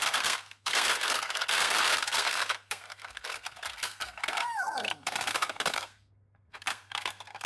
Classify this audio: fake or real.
fake